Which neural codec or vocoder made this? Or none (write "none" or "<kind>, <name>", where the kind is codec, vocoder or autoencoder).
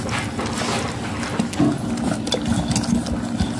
none